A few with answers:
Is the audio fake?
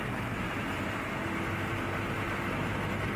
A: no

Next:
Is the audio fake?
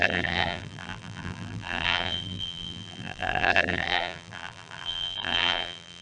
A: yes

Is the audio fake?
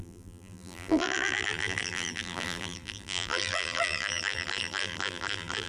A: yes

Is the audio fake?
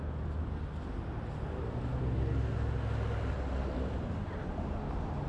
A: no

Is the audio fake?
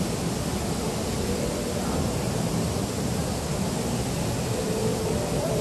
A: no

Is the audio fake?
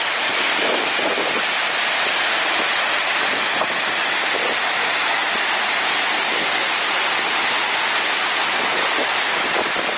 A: no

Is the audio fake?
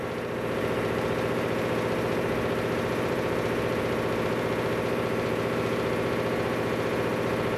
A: yes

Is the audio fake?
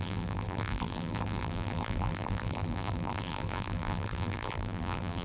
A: yes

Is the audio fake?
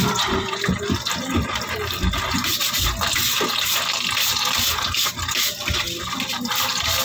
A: no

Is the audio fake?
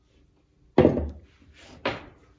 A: no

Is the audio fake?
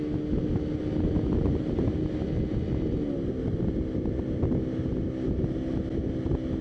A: no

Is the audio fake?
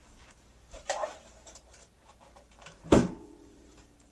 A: yes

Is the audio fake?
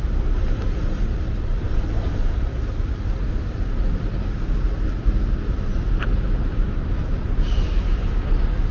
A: no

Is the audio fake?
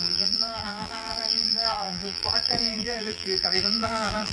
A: yes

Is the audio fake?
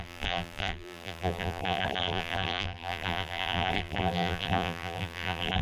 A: yes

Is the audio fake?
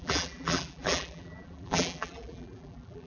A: yes